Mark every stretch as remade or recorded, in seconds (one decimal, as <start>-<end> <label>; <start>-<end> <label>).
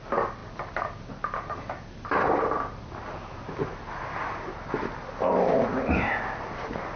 0.0-7.0 recorded